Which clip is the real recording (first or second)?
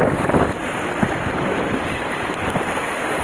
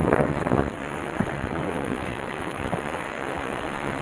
first